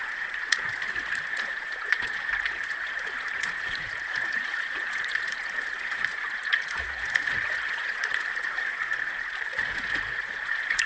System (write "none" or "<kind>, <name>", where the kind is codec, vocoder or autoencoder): vocoder, Vocos